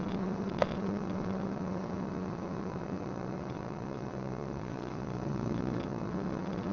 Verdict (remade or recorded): remade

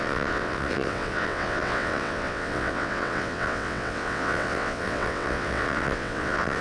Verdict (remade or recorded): remade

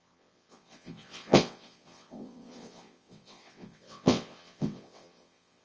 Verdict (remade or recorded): remade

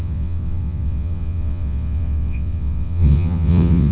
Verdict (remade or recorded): remade